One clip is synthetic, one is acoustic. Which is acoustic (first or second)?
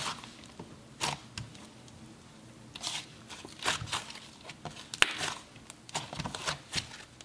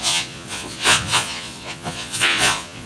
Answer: first